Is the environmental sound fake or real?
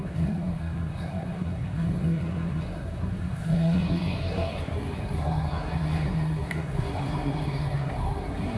fake